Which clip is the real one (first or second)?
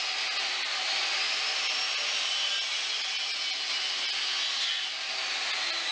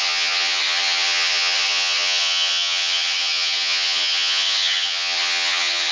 first